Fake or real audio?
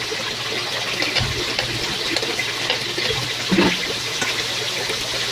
real